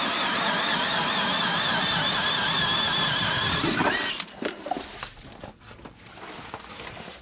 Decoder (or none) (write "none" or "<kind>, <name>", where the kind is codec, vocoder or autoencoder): none